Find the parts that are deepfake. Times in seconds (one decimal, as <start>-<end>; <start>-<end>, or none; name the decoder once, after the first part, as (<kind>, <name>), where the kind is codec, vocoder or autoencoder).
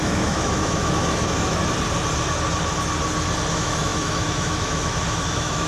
0.0-1.6 (autoencoder, DAC-VAE); 3.5-5.7